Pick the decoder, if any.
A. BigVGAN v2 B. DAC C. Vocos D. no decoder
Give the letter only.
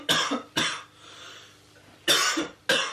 D